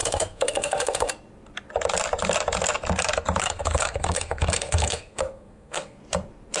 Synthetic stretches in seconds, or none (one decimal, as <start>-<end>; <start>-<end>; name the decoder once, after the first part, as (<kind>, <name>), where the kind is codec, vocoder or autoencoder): 0.0-1.1 (codec, SNAC); 3.4-6.0